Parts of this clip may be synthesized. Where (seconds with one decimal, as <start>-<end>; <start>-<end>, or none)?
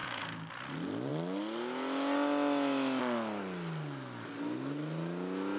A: 0.0-0.5